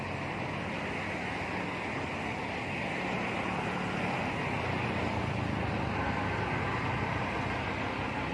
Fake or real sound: real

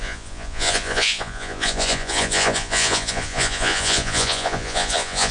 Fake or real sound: fake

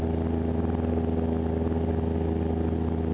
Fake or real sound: real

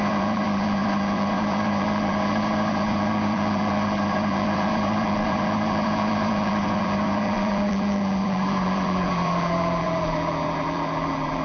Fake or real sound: fake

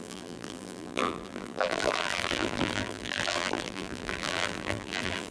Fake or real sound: fake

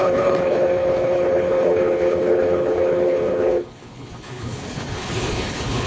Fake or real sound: fake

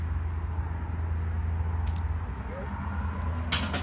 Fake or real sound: real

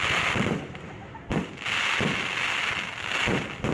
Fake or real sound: real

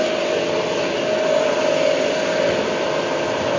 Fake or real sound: real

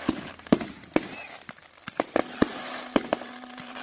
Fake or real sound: fake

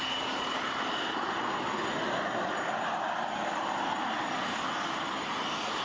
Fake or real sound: real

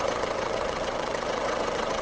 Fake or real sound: fake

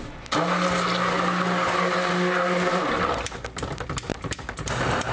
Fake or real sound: real